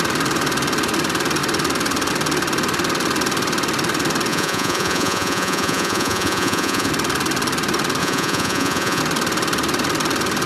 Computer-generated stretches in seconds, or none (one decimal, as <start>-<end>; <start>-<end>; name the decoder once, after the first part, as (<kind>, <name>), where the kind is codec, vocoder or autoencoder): 4.3-6.9 (vocoder, Vocos); 8.0-9.0